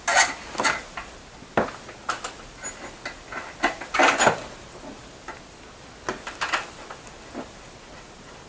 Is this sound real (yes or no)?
yes